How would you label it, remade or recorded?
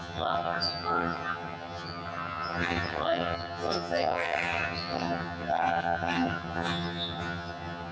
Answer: remade